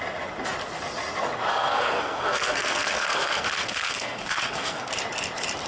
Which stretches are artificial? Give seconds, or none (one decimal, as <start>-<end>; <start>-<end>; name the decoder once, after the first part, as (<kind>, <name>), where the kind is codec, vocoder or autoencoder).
1.5-4.9 (codec, SNAC)